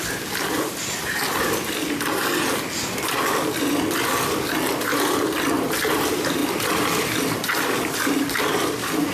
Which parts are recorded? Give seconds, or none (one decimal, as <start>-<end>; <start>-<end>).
0.0-9.1